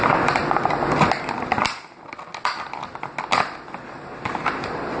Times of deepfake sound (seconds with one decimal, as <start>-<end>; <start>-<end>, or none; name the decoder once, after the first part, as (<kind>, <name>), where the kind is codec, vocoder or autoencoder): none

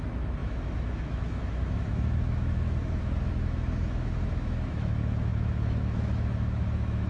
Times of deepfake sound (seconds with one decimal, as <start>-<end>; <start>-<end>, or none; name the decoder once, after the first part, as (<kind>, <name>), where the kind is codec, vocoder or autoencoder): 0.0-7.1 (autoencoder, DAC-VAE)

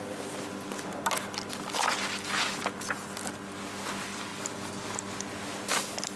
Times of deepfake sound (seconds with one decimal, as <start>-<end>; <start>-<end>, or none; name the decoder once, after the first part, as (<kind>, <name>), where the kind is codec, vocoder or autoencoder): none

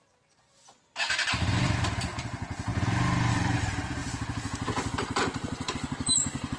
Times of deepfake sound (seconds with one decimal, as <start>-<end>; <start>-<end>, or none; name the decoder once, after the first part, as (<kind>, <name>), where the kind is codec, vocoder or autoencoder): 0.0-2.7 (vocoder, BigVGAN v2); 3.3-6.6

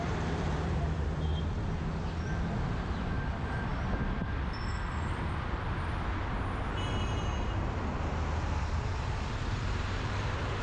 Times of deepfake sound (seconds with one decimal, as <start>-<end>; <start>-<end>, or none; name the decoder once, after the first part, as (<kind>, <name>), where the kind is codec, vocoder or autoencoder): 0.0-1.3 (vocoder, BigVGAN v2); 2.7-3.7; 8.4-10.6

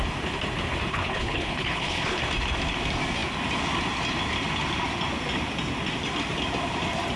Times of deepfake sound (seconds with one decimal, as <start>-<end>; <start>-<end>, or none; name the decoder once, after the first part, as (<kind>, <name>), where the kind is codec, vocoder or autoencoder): 0.9-2.2 (codec, HILCodec)

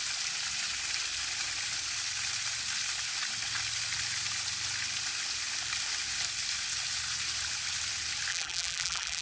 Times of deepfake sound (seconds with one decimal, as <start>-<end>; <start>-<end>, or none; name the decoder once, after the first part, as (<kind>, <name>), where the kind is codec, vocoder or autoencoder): 8.3-9.2 (vocoder, BigVGAN v2)